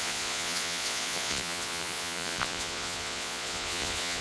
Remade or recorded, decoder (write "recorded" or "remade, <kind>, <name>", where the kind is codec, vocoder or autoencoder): remade, vocoder, Vocos